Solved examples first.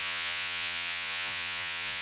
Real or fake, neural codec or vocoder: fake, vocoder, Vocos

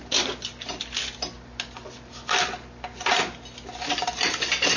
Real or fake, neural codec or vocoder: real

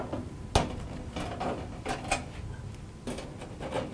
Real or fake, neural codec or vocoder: real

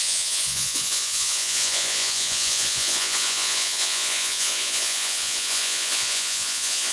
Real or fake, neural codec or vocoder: fake, vocoder, Vocos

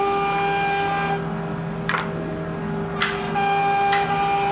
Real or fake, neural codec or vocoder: real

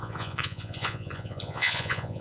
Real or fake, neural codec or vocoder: fake, vocoder, Vocos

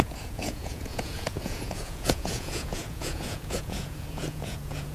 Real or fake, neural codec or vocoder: fake, vocoder, Vocos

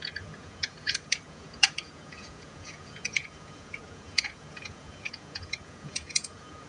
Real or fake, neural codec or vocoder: fake, vocoder, Vocos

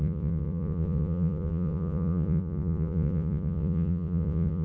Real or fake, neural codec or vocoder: fake, vocoder, Vocos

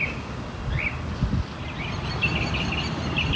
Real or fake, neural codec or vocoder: real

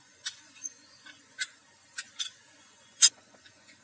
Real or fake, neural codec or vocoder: fake, vocoder, Vocos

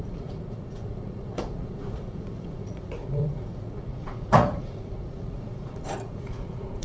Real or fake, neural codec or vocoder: fake, vocoder, Vocos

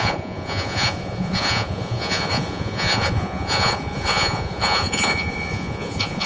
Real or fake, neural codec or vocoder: fake, vocoder, Vocos